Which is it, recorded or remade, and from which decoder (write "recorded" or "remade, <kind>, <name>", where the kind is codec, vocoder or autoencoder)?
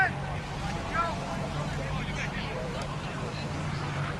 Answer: remade, vocoder, BigVGAN v2